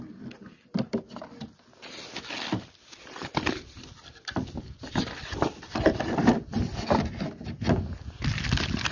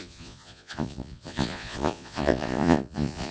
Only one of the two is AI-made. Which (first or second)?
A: second